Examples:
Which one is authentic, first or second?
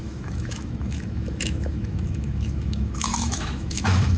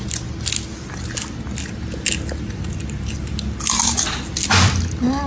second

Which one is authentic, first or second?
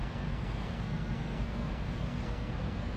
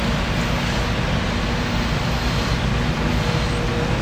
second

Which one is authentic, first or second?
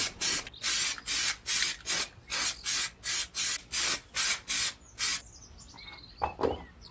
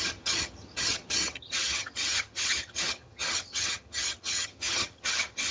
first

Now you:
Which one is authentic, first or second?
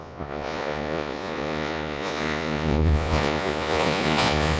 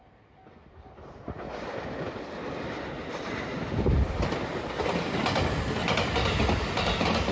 second